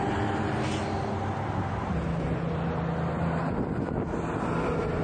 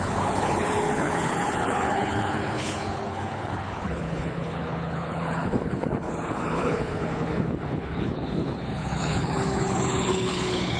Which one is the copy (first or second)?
second